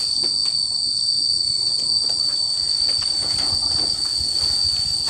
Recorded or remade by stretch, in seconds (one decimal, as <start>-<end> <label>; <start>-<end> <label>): 0.0-5.1 recorded

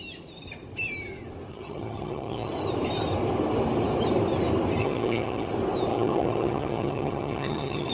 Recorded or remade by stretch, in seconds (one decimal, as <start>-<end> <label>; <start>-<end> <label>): 0.0-1.5 recorded; 1.5-2.5 remade; 2.5-4.8 recorded; 4.8-5.5 remade; 5.5-5.9 recorded; 5.9-7.9 remade

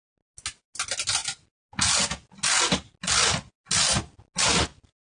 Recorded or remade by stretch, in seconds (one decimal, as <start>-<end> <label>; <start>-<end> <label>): 0.0-5.0 recorded

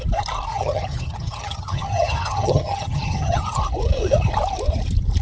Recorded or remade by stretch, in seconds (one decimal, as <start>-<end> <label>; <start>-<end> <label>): 0.0-0.5 recorded; 0.5-3.6 remade; 3.6-5.2 recorded